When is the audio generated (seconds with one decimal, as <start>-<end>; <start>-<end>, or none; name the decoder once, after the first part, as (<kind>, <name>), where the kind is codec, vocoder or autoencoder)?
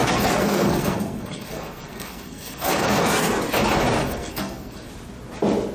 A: 0.0-3.4 (codec, SNAC); 4.0-4.9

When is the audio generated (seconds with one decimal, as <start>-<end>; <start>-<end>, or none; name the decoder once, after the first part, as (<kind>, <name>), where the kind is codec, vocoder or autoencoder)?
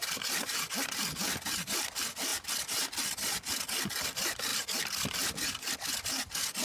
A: none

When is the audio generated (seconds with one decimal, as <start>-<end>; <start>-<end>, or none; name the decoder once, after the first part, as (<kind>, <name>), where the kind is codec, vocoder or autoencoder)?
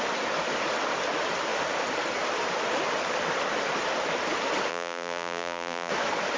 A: 4.7-5.9 (vocoder, BigVGAN v2)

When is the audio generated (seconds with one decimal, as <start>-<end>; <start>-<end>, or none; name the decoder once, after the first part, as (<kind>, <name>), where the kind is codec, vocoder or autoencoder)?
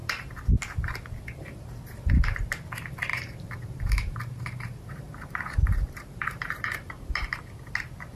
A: 3.1-6.9 (vocoder, BigVGAN v2)